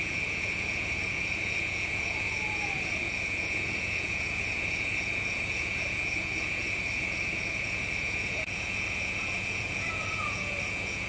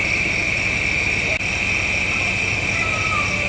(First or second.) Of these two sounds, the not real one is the first